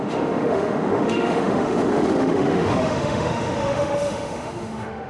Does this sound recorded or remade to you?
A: remade